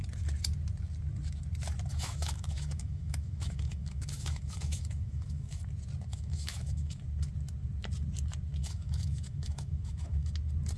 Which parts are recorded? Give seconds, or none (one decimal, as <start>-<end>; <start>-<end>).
0.0-1.9; 5.6-6.1; 7.0-8.6; 10.3-10.8